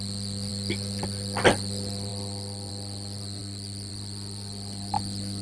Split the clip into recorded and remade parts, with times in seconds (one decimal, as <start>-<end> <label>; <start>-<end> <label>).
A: 0.0-5.4 recorded